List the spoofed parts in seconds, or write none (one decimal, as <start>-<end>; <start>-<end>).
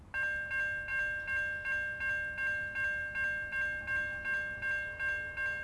none